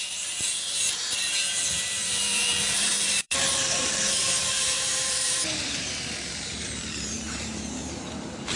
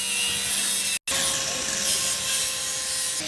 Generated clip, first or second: first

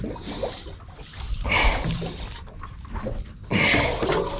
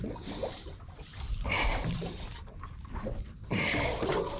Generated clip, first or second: second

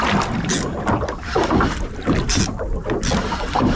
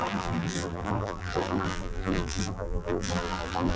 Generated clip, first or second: second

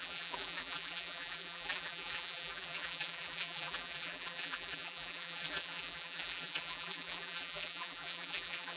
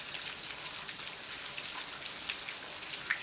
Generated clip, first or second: first